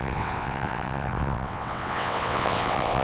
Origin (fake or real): fake